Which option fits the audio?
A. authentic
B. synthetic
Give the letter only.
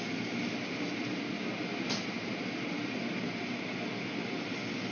A